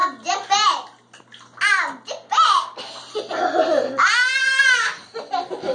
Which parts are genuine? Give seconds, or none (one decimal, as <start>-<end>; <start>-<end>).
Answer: 0.0-5.7